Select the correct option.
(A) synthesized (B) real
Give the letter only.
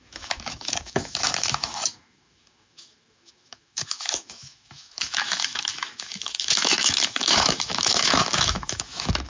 A